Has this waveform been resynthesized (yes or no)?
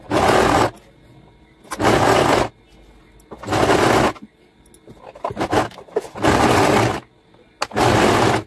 no